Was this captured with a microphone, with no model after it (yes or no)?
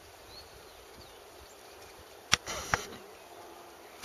no